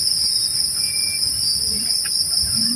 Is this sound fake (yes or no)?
no